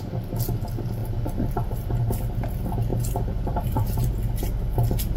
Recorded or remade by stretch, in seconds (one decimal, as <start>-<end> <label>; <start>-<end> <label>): 0.0-2.9 recorded; 2.9-4.1 remade; 4.1-5.2 recorded

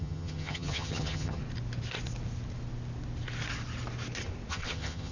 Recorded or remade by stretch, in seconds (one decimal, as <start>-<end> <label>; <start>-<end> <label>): 0.0-1.4 remade; 1.4-4.5 recorded; 4.5-5.1 remade

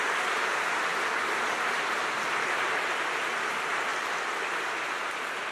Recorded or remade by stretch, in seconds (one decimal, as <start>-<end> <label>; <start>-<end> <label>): 0.0-0.9 remade; 0.9-1.4 recorded; 1.4-5.5 remade

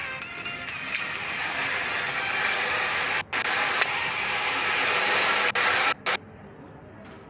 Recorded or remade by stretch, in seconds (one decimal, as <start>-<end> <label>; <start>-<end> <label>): 0.0-7.3 recorded

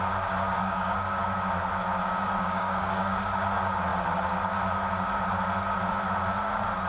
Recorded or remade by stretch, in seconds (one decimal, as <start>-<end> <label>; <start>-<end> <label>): 0.0-0.6 recorded; 0.6-1.2 remade; 1.2-2.0 recorded; 2.0-3.2 remade; 3.2-6.9 recorded